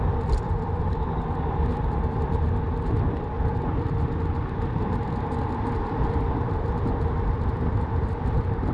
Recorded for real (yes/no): no